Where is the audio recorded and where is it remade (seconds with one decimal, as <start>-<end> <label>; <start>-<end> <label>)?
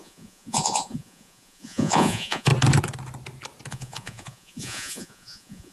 0.0-2.5 remade; 2.5-3.7 recorded; 3.7-5.7 remade